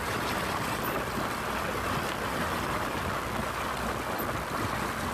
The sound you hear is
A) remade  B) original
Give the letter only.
B